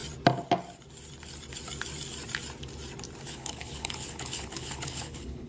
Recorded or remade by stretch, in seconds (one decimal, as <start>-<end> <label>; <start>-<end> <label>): 0.0-3.3 recorded; 3.3-5.5 remade